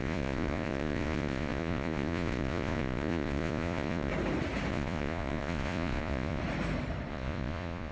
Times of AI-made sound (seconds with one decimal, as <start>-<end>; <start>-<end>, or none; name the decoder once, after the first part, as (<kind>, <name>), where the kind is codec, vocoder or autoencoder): 0.0-4.1 (vocoder, Vocos); 4.7-6.4; 7.1-7.9